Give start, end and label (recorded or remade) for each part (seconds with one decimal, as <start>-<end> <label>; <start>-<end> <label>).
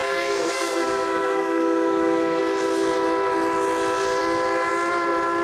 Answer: 0.0-2.4 remade; 2.4-5.4 recorded